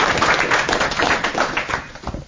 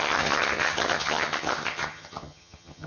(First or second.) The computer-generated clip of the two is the second